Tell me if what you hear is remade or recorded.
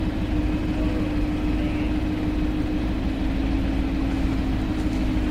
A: recorded